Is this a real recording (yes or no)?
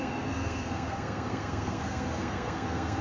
no